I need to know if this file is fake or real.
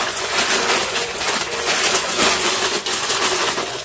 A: fake